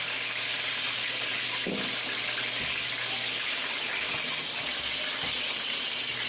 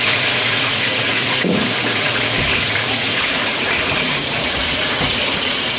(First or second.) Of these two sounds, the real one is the first